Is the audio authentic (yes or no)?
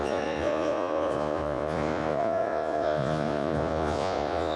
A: no